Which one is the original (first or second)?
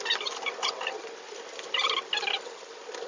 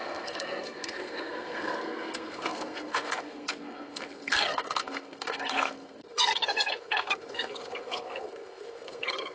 first